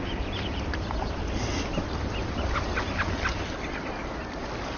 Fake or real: real